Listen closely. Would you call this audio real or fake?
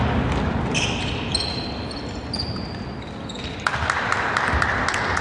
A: real